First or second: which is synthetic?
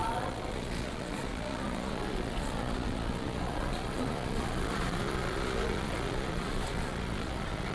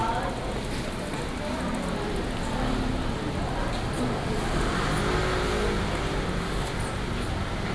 first